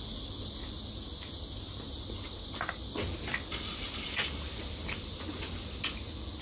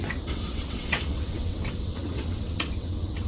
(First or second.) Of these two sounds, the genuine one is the first